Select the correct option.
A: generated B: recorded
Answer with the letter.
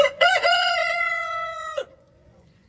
A